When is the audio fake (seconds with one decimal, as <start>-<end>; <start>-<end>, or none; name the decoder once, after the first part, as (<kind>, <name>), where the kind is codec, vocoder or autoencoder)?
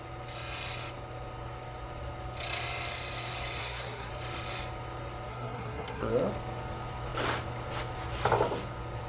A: 3.6-4.1 (codec, SNAC); 5.3-6.1